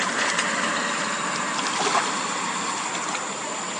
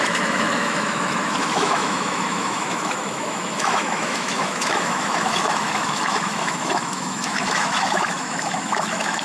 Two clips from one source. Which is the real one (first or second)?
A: first